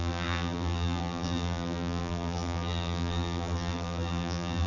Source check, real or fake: fake